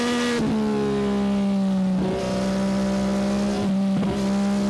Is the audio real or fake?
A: real